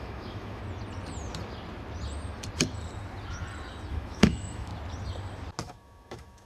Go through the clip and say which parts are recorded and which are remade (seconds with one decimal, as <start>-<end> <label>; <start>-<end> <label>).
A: 0.0-0.6 remade; 0.6-3.9 recorded; 3.9-4.7 remade; 4.7-5.6 recorded; 5.6-6.5 remade